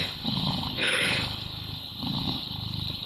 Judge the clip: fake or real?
fake